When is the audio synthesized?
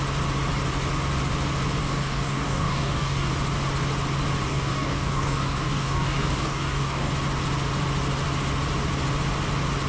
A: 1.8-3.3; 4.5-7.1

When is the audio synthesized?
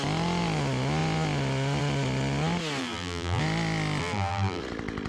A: 2.8-3.4; 4.0-4.6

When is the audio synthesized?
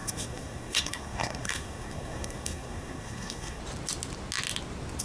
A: 0.0-3.6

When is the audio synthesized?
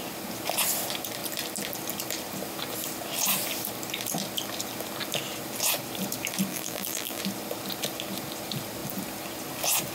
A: 6.5-7.2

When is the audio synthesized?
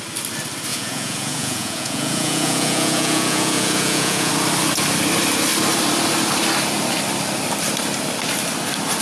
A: 0.7-4.3